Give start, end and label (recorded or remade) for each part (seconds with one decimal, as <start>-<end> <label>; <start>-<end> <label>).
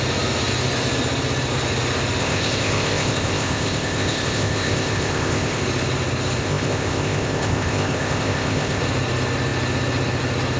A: 0.0-2.2 recorded; 2.2-5.6 remade; 5.6-6.4 recorded; 6.4-8.8 remade; 8.8-10.6 recorded